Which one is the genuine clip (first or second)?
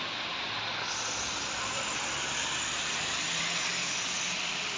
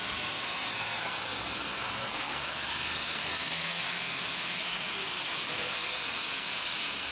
first